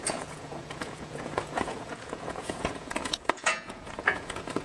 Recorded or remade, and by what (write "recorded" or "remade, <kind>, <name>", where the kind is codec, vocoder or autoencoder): remade, vocoder, Vocos